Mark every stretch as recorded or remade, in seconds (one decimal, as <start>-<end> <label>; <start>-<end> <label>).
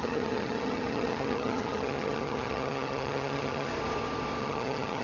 0.0-3.7 remade; 3.7-4.4 recorded; 4.4-5.0 remade